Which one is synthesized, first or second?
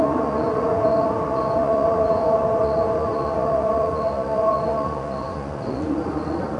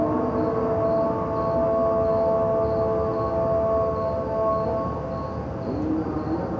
first